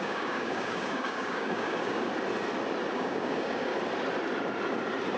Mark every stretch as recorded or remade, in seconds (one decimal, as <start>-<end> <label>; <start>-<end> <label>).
0.0-2.1 remade; 2.1-2.9 recorded; 2.9-3.7 remade; 3.7-5.2 recorded